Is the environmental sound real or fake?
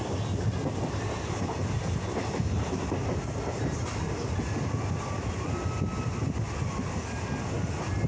real